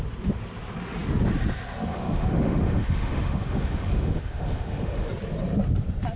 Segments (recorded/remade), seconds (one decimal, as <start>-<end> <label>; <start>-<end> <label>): 0.0-1.9 recorded; 1.9-5.1 remade; 5.1-6.2 recorded